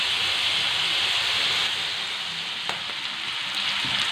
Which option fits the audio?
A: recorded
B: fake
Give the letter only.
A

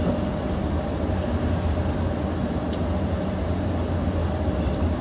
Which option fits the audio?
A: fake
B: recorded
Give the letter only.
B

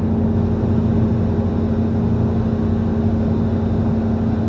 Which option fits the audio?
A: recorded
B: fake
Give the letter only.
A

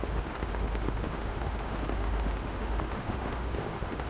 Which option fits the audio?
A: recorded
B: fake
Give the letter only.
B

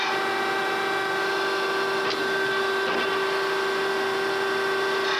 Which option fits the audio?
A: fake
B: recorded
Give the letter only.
B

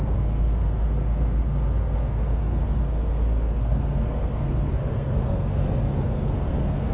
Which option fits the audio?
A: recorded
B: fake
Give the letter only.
B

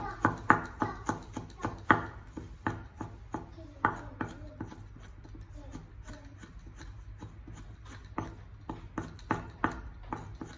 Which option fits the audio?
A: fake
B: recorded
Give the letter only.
B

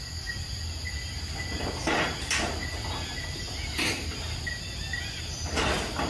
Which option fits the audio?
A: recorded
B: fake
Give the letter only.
A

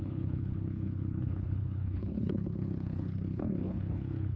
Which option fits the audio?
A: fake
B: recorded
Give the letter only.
A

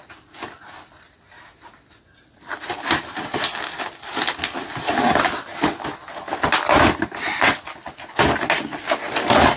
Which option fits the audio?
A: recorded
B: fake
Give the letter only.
A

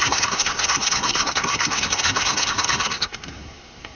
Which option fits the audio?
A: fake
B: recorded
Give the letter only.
A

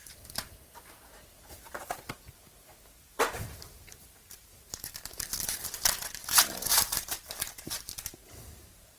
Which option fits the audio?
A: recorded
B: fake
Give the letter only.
B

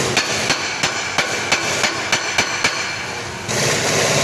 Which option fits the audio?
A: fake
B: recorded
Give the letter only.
B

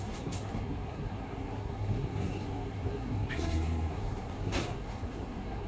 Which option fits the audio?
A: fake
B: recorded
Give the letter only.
A